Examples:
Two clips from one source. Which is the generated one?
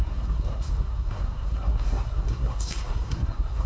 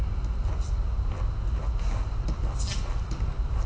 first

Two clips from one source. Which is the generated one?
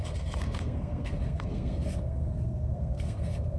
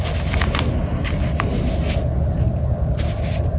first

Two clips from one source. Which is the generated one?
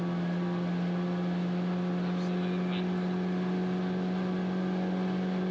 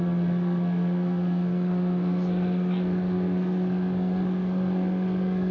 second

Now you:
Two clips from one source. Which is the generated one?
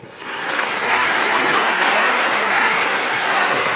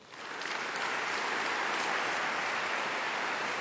first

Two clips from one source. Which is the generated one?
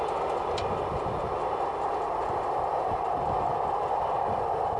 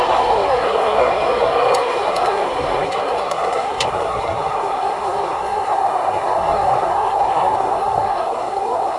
second